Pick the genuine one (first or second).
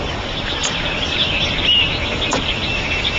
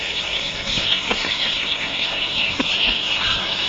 first